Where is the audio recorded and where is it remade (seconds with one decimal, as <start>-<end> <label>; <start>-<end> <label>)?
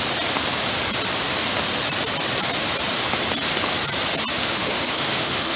0.0-4.5 recorded; 4.5-5.6 remade